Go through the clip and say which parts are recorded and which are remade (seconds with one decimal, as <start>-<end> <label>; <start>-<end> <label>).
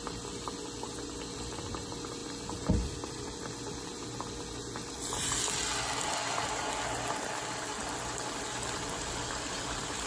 0.0-10.1 recorded